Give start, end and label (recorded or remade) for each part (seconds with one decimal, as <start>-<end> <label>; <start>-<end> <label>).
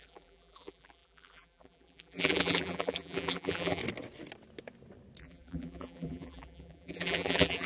0.0-3.8 remade; 3.8-5.2 recorded; 5.2-7.7 remade